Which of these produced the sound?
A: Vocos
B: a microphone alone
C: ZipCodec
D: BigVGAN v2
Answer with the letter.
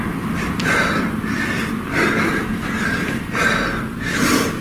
D